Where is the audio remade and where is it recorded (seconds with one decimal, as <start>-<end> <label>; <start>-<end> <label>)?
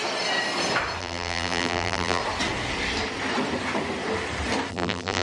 0.0-1.0 recorded; 1.0-2.2 remade; 2.2-4.7 recorded; 4.7-5.2 remade